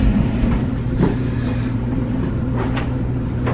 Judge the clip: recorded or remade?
remade